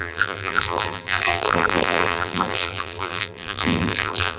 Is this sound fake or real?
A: fake